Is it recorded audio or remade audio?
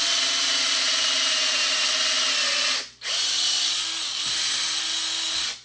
recorded